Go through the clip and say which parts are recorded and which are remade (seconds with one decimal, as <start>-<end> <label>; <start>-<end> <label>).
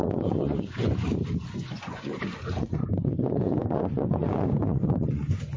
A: 0.0-1.1 remade; 1.1-1.7 recorded; 1.7-5.6 remade